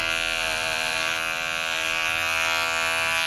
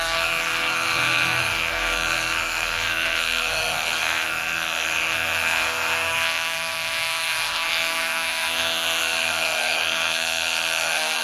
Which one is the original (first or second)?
first